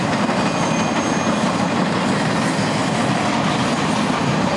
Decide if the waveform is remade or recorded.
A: recorded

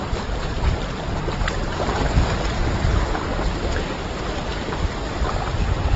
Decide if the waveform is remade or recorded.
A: recorded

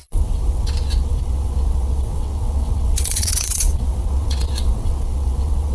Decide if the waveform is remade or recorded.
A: remade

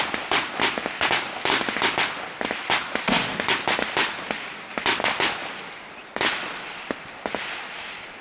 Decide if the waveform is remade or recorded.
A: recorded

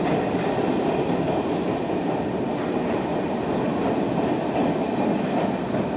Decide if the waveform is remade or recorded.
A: recorded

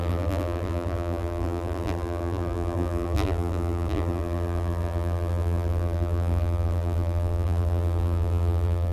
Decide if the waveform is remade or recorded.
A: remade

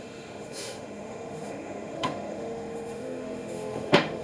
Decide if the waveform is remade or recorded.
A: remade